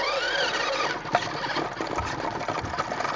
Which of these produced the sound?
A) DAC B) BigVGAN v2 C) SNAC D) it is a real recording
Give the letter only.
D